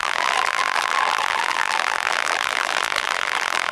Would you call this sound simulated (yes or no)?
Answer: yes